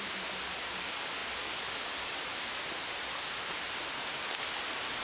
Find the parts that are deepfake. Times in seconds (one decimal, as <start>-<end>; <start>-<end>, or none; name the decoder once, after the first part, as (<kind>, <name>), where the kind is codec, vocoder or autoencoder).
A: 1.2-4.2 (vocoder, BigVGAN v2)